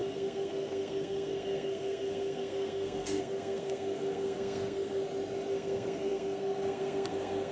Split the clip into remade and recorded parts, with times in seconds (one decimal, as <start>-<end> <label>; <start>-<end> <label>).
0.0-5.0 remade; 5.0-5.5 recorded; 5.5-7.5 remade